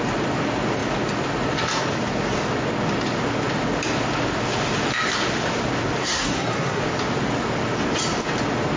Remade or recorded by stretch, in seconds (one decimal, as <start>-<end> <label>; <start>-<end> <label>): 0.0-6.0 recorded; 6.0-6.8 remade; 6.8-8.8 recorded